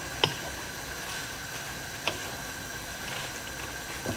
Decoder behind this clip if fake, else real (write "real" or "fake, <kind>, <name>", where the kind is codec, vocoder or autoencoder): real